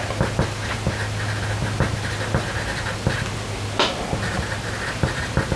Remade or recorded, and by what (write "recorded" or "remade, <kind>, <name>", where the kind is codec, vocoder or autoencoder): recorded